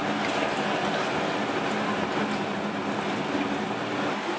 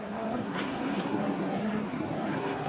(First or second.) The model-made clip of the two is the second